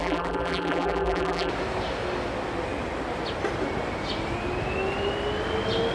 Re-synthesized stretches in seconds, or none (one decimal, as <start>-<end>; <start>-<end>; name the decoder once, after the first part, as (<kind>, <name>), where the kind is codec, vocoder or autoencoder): 0.0-1.5 (vocoder, BigVGAN v2)